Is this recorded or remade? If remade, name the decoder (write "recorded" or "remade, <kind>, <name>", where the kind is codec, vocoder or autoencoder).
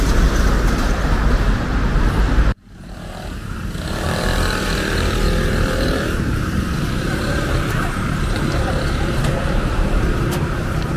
remade, vocoder, BigVGAN v2